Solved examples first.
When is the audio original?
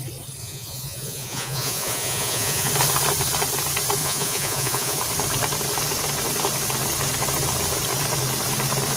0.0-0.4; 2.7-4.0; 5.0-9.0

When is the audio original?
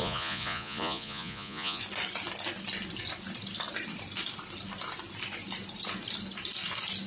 1.8-7.1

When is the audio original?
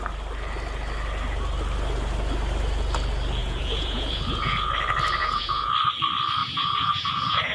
0.0-3.4; 4.7-5.2; 5.7-6.4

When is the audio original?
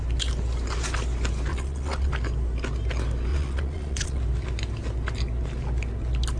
0.0-1.5; 2.1-3.3; 4.2-6.4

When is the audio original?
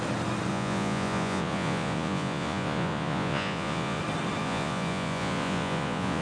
0.0-0.5; 4.0-4.4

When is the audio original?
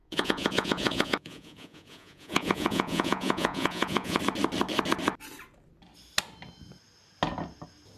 4.2-8.0